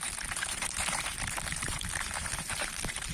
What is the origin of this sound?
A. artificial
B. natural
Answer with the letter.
A